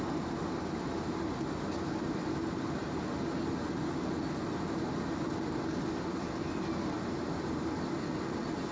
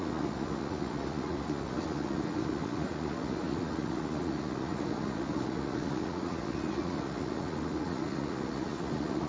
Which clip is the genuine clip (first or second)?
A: first